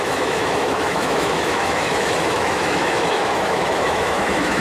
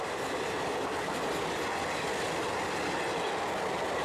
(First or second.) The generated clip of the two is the first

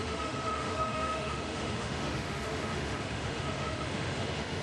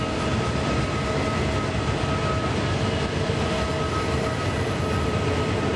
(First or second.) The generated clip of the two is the first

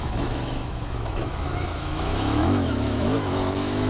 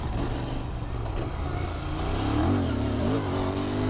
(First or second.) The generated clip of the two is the first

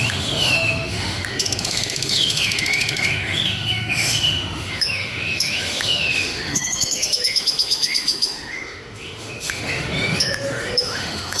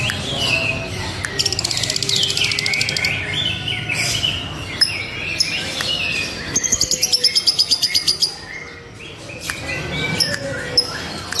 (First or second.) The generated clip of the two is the first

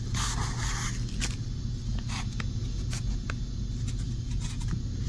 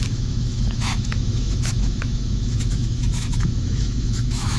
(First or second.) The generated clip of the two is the second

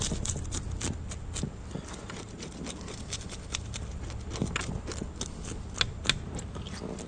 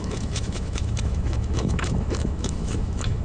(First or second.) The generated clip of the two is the second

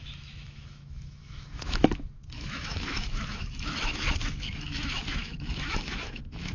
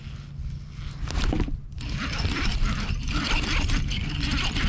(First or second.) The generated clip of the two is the first